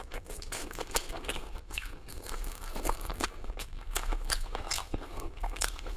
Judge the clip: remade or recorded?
remade